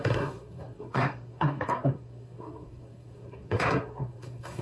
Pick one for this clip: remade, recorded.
remade